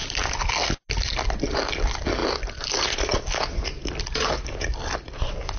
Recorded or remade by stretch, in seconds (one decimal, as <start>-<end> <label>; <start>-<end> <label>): 0.0-5.6 recorded